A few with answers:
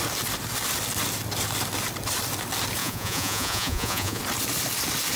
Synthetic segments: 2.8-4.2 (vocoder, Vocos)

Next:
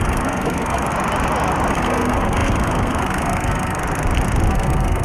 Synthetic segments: 0.0-0.9 (codec, SNAC); 1.7-3.8; 4.5-5.0

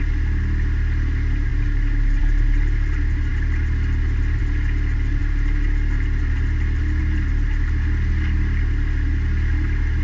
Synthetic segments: none

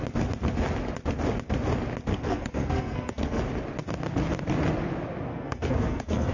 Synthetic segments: 2.1-3.4 (codec, SNAC); 5.3-6.3